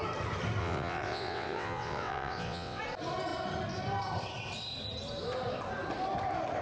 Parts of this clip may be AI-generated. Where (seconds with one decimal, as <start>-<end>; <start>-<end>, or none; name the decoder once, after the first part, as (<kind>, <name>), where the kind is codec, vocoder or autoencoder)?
0.6-2.8 (vocoder, WaveNeXt)